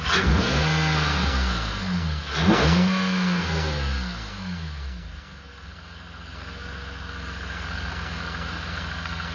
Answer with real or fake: fake